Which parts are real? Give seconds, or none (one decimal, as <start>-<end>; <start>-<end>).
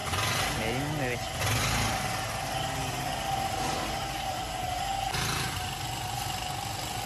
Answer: 0.0-7.1